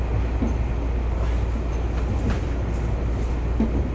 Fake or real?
real